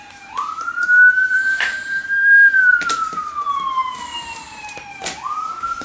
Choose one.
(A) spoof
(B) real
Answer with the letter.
A